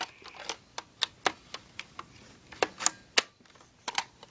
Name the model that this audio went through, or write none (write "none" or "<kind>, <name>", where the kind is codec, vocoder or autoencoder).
none